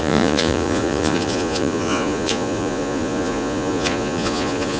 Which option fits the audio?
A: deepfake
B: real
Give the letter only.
A